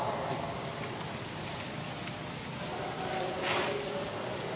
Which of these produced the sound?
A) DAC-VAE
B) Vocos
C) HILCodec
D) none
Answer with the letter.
D